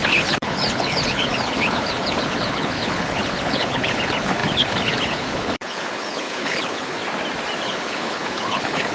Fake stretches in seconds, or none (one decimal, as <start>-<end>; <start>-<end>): 0.0-7.0; 7.6-8.9

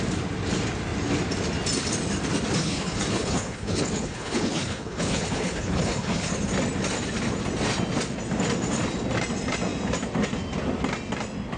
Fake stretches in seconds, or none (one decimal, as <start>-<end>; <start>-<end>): 2.6-6.3

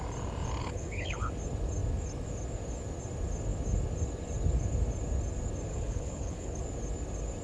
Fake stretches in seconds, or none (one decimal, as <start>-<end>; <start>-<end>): 0.6-1.3; 5.7-6.6

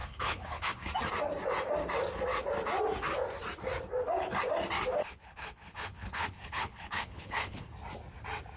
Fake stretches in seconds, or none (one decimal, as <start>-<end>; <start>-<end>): 0.0-0.9; 5.0-7.7

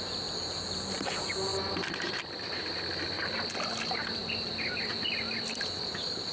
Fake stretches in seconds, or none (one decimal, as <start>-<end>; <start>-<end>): none

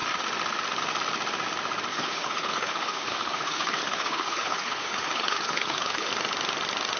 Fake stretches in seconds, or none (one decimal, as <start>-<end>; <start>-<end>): 1.9-6.1

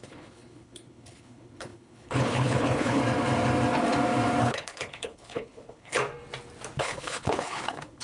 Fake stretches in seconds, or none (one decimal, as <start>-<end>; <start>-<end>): 0.0-3.0; 4.4-6.0; 6.8-8.0